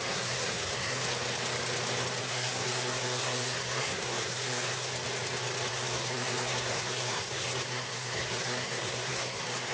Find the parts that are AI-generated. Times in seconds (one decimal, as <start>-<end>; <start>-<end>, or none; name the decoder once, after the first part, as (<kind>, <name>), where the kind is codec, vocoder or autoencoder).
0.0-1.0 (codec, SNAC); 2.2-4.9; 5.7-9.7

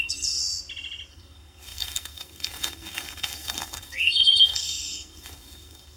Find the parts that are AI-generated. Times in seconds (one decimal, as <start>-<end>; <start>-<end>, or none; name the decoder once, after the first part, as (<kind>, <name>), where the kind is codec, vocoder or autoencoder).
0.0-0.4 (codec, SNAC); 1.1-6.0

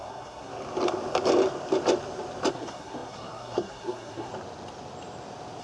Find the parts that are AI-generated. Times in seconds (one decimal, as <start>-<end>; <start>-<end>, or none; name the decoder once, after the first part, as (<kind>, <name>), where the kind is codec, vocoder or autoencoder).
0.0-0.5 (codec, SNAC); 2.5-4.3